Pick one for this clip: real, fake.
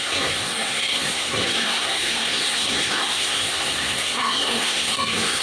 fake